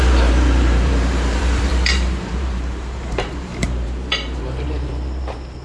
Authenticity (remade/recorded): remade